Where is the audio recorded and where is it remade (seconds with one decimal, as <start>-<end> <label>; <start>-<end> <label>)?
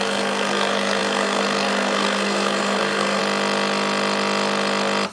0.0-3.2 remade; 3.2-5.1 recorded